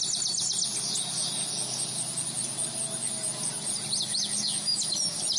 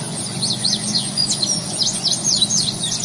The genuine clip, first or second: first